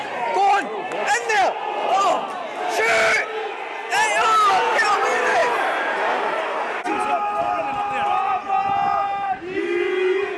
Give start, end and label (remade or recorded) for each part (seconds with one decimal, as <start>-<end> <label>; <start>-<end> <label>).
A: 0.0-10.4 recorded